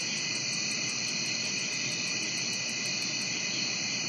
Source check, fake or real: real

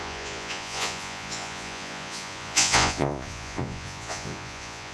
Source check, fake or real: fake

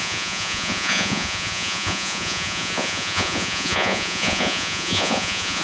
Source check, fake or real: fake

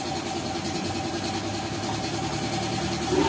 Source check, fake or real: real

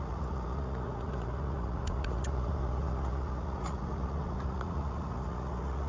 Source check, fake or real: fake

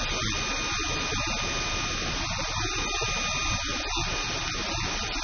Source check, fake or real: real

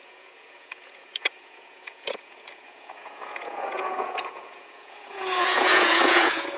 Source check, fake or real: fake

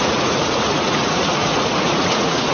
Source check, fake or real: fake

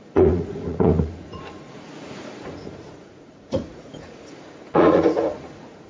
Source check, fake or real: fake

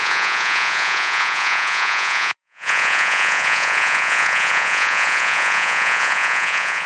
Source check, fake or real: fake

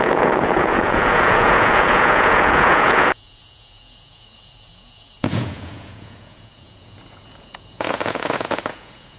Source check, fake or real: fake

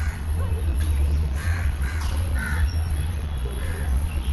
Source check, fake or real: fake